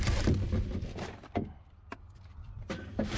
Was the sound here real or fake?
real